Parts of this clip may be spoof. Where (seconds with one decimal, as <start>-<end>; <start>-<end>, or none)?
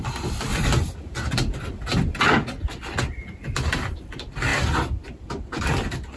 0.0-0.5; 2.2-6.2